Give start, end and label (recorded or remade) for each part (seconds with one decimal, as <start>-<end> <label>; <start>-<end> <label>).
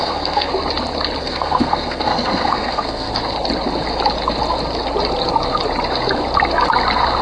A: 0.0-0.5 remade; 0.5-1.2 recorded; 1.2-3.1 remade; 3.1-7.2 recorded